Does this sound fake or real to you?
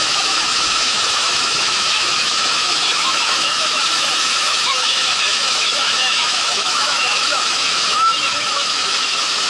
fake